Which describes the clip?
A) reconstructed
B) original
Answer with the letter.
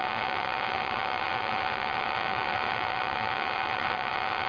A